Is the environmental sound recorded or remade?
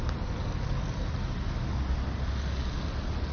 recorded